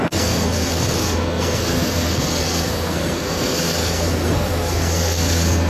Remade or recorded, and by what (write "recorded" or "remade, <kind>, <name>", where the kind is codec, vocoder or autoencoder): remade, codec, SNAC